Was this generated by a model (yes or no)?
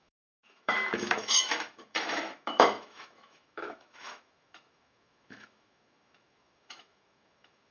yes